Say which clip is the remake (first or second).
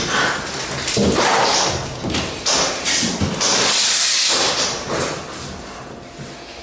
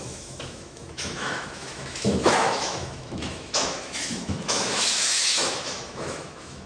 second